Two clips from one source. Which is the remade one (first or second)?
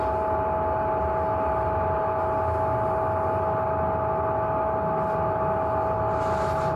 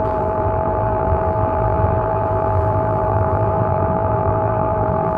second